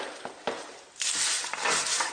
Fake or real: real